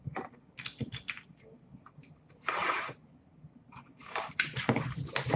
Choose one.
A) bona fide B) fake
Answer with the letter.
A